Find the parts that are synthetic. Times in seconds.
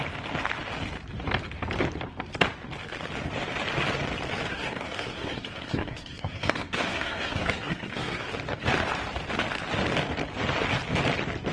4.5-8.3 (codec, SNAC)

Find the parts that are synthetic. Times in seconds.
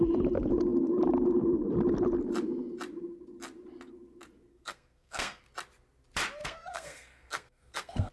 4.5-5.4 (codec, SNAC); 6.4-8.1